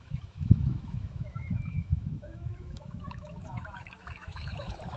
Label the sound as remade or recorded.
remade